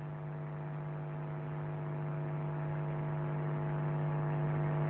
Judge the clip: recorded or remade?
recorded